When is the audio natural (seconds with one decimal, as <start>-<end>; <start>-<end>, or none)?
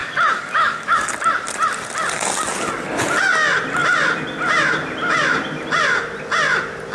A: 1.1-6.9